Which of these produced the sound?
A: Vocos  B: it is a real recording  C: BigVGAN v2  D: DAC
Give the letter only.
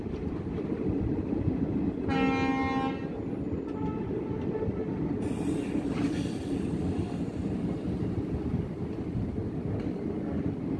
B